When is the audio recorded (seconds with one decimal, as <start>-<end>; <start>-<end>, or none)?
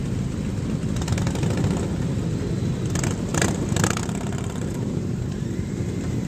0.0-3.3